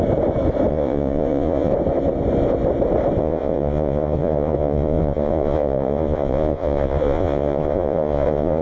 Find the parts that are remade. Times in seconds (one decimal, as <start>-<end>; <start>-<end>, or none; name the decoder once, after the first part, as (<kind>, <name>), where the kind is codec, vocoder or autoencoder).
0.7-1.7 (vocoder, Vocos); 3.2-8.6